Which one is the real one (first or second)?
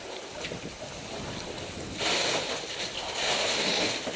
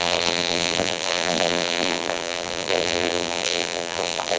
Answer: first